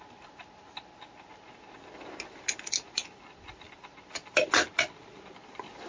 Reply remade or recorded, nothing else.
recorded